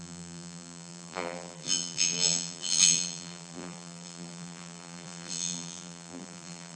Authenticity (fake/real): fake